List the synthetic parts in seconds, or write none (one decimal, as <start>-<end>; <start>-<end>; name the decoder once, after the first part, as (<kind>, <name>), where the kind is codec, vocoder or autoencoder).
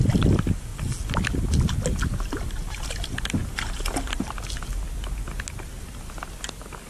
none